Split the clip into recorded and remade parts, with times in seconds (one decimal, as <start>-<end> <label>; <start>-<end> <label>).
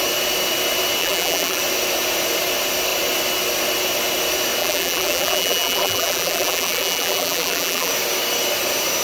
0.0-1.0 recorded; 1.0-1.6 remade; 1.6-4.6 recorded; 4.6-7.9 remade; 7.9-9.0 recorded